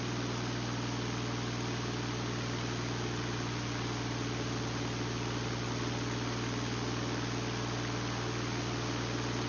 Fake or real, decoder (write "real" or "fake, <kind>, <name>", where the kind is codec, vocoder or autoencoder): real